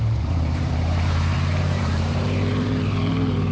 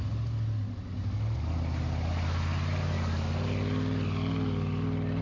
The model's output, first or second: first